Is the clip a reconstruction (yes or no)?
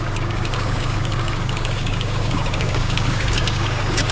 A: yes